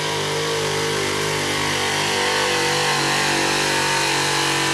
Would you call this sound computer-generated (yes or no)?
no